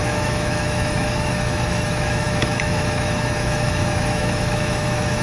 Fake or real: fake